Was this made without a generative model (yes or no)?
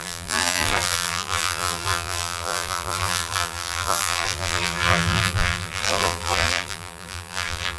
no